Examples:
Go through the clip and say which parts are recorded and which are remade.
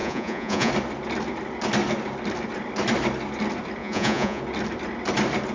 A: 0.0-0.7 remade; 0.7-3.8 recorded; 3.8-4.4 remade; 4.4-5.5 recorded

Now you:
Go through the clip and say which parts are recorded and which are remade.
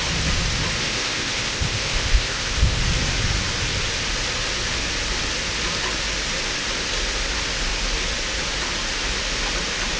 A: 0.0-0.8 recorded; 0.8-2.8 remade; 2.8-10.0 recorded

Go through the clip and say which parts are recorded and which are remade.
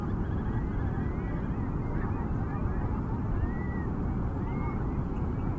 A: 0.0-5.6 recorded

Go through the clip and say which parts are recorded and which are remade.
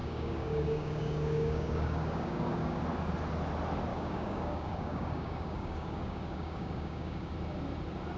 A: 0.0-2.8 remade; 2.8-3.9 recorded; 3.9-7.3 remade; 7.3-8.2 recorded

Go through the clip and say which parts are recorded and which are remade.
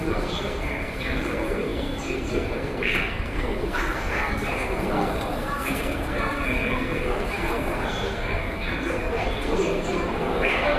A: 0.0-10.8 remade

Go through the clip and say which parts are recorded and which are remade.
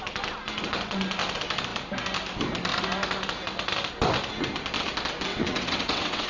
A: 0.0-5.3 recorded; 5.3-6.3 remade